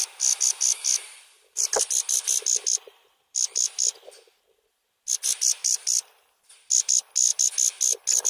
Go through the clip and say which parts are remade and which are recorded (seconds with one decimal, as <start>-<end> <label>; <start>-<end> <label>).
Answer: 0.0-1.1 recorded; 1.1-4.0 remade; 4.0-5.6 recorded; 5.6-6.5 remade; 6.5-8.3 recorded